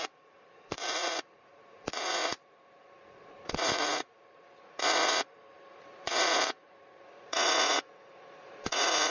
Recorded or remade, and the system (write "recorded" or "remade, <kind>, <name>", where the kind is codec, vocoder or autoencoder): remade, vocoder, Vocos